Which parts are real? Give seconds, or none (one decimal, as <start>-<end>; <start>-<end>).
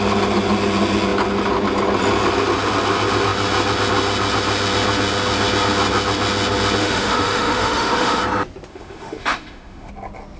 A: 0.0-6.8; 8.2-8.7; 9.9-10.4